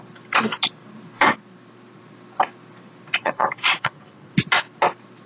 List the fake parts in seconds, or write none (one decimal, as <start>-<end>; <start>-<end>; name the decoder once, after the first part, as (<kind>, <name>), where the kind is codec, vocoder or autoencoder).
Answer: 3.2-4.3 (vocoder, Vocos)